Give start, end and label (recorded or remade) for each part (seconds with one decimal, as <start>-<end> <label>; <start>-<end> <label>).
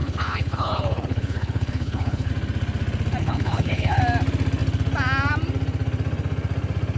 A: 0.0-2.3 remade; 2.3-3.2 recorded; 3.2-4.0 remade; 4.0-7.0 recorded